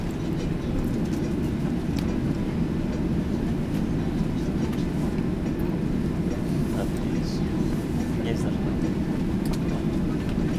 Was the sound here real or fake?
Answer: real